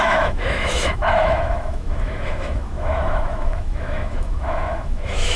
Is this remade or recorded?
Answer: remade